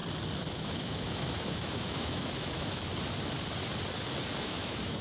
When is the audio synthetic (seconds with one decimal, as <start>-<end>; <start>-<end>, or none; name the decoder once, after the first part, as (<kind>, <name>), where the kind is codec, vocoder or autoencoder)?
0.5-2.9 (autoencoder, DAC-VAE); 4.4-5.0